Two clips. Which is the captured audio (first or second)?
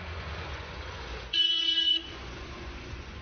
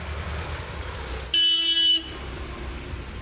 second